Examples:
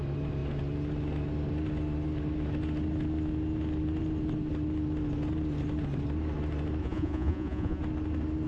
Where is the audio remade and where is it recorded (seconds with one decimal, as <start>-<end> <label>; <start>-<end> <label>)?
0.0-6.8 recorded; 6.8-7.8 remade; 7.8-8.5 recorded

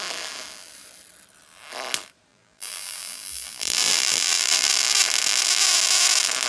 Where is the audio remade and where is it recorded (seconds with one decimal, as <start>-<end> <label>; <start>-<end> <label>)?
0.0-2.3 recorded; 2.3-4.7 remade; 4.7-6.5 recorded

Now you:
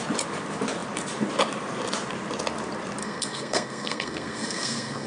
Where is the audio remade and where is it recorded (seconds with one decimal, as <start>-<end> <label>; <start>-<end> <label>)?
0.0-3.0 recorded; 3.0-5.1 remade

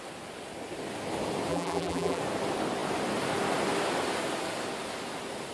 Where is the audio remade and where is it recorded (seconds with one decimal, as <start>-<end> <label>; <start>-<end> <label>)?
0.0-1.5 recorded; 1.5-2.2 remade; 2.2-5.5 recorded

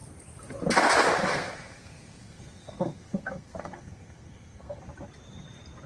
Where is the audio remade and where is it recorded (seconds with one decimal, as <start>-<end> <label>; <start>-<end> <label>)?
0.0-1.3 recorded; 1.3-4.8 remade; 4.8-5.9 recorded

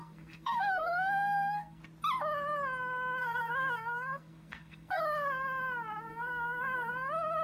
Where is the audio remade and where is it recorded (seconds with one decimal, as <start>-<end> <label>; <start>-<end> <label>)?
0.0-1.8 remade; 1.8-3.2 recorded; 3.2-5.0 remade; 5.0-6.1 recorded; 6.1-6.9 remade; 6.9-7.4 recorded

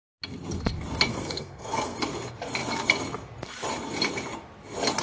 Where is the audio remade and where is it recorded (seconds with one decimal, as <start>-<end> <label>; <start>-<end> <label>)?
0.0-1.1 recorded; 1.1-2.0 remade; 2.0-5.0 recorded